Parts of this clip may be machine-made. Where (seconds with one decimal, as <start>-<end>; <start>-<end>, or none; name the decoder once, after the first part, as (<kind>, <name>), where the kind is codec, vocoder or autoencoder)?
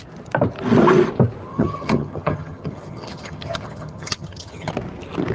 1.5-4.7 (vocoder, HiFi-GAN)